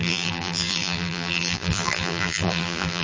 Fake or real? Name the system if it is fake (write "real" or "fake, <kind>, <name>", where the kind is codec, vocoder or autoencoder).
fake, vocoder, BigVGAN v2